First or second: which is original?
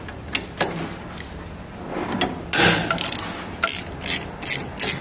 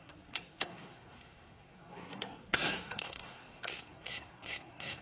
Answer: first